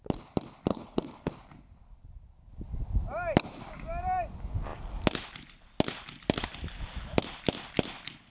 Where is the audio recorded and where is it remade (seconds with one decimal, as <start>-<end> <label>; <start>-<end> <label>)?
0.0-0.7 recorded; 0.7-1.3 remade; 1.3-8.3 recorded